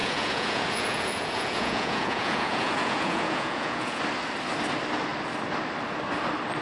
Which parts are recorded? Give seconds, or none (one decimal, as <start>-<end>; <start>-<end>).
4.0-6.6